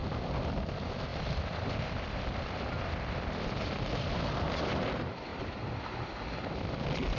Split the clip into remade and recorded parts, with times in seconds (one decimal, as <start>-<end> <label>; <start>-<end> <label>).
0.0-0.5 remade; 0.5-1.1 recorded; 1.1-4.7 remade; 4.7-7.2 recorded